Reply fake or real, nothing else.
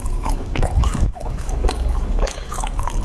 fake